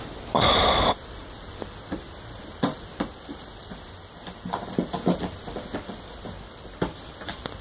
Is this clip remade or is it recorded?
remade